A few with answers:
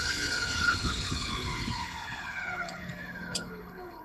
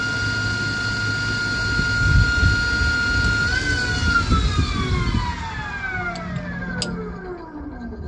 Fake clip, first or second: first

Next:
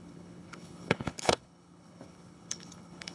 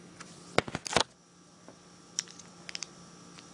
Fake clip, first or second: first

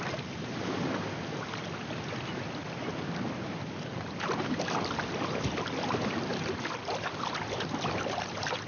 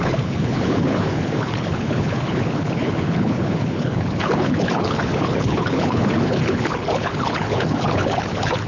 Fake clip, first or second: second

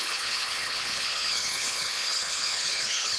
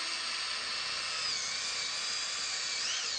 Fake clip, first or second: first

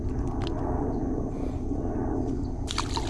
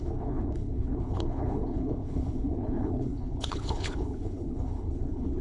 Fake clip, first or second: second